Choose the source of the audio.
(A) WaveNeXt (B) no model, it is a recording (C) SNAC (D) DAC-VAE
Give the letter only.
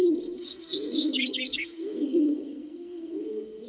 C